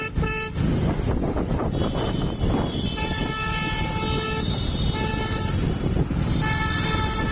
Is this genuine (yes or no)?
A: yes